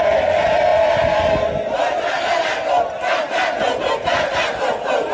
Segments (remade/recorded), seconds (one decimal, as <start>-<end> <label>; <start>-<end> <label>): 0.0-5.1 recorded